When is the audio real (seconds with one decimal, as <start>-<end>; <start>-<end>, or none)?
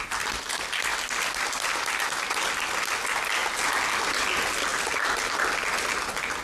0.0-6.4